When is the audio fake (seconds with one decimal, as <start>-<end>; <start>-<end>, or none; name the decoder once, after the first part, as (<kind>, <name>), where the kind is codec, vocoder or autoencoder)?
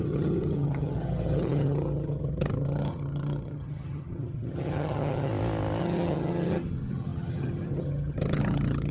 0.0-5.3 (vocoder, HiFi-GAN); 5.8-8.9